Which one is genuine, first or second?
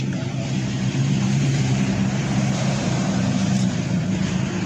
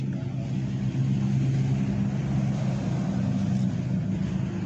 second